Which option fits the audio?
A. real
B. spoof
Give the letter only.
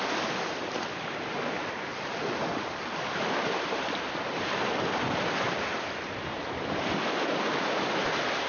B